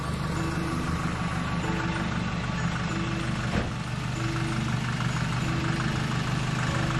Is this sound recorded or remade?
recorded